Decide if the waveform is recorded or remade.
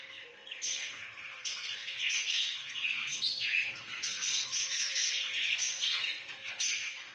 remade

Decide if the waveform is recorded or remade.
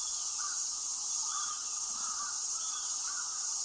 remade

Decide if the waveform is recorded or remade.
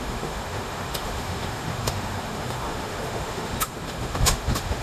remade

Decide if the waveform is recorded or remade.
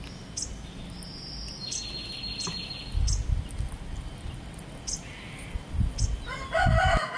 recorded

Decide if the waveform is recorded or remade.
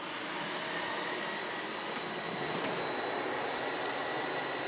recorded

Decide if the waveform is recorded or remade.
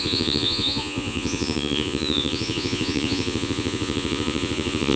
remade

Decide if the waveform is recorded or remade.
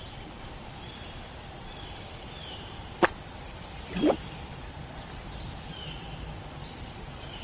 remade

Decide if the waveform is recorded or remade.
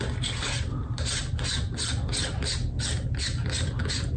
recorded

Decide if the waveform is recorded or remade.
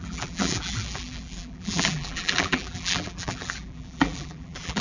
remade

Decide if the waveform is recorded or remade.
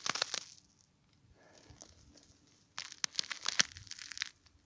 recorded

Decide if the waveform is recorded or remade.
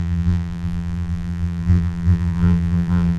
remade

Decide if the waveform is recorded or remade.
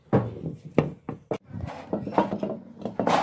recorded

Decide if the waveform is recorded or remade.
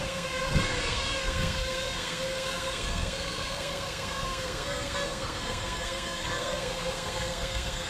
remade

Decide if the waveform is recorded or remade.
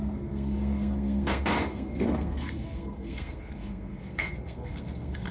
remade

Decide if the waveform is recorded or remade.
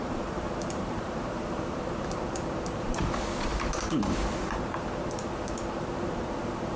remade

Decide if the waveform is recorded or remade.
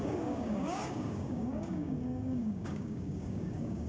remade